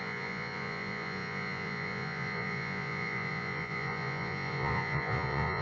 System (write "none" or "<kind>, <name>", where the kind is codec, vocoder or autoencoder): vocoder, Vocos